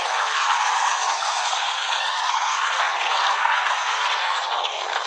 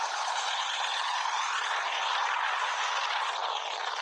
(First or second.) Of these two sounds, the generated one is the first